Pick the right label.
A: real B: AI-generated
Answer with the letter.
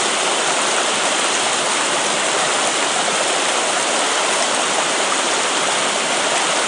A